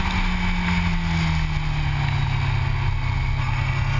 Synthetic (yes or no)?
no